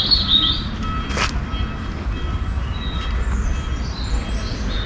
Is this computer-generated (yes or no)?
no